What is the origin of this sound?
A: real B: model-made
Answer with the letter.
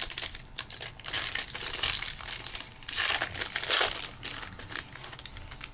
B